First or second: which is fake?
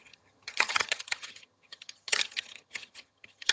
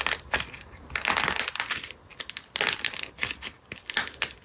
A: first